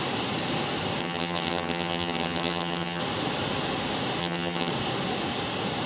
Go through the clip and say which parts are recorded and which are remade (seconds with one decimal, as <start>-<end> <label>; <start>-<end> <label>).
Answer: 0.0-1.0 recorded; 1.0-3.0 remade; 3.0-4.2 recorded; 4.2-4.7 remade; 4.7-5.9 recorded

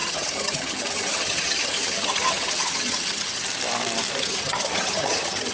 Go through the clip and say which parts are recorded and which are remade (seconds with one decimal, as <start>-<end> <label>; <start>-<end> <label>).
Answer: 0.0-3.4 remade; 3.4-4.2 recorded; 4.2-5.5 remade

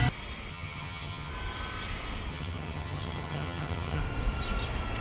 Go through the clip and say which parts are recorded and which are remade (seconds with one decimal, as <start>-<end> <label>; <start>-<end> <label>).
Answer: 0.0-0.5 recorded; 0.5-1.3 remade; 1.3-2.3 recorded; 2.3-4.0 remade; 4.0-5.0 recorded

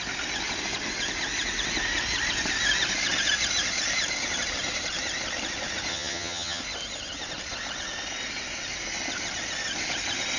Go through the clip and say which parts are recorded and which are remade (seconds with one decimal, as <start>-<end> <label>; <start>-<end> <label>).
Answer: 0.0-5.9 recorded; 5.9-6.6 remade; 6.6-10.4 recorded

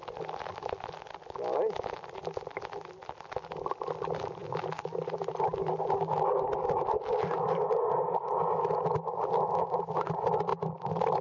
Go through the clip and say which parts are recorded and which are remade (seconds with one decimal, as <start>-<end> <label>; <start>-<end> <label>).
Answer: 0.0-11.2 recorded

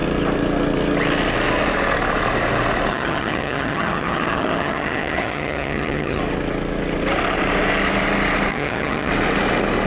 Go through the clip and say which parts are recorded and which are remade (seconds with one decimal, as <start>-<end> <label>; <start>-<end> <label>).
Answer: 0.0-2.9 recorded; 2.9-6.2 remade; 6.2-8.5 recorded; 8.5-9.1 remade; 9.1-9.9 recorded

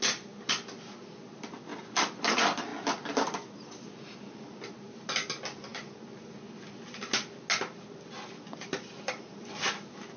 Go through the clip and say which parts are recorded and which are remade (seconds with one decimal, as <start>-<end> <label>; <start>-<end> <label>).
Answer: 0.0-10.2 recorded

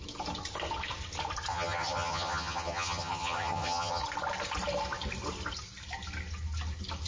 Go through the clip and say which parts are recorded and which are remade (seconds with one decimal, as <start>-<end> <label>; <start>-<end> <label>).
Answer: 0.0-1.5 recorded; 1.5-4.0 remade; 4.0-7.1 recorded